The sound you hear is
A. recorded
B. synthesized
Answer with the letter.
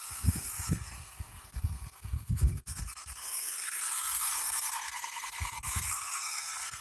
B